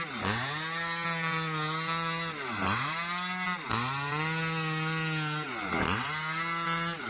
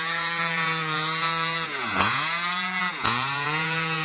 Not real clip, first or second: second